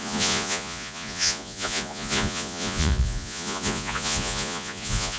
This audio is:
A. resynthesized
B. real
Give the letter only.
A